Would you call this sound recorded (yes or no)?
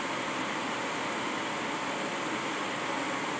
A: yes